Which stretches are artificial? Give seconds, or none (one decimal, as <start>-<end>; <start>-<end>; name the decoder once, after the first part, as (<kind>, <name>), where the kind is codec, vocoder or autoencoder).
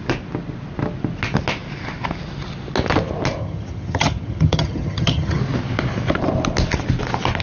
3.4-5.4 (vocoder, HiFi-GAN)